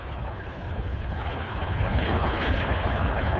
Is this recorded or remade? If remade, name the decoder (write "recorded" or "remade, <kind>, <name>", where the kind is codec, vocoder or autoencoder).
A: remade, codec, HILCodec